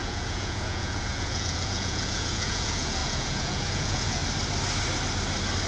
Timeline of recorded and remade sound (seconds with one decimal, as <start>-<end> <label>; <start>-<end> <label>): 0.0-4.2 remade; 4.2-5.7 recorded